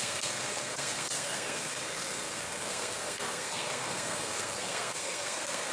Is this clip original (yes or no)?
no